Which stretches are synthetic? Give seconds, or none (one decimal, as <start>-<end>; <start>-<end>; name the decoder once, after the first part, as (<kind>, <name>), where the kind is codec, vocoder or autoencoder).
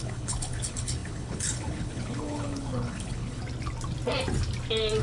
0.0-3.4 (codec, HILCodec)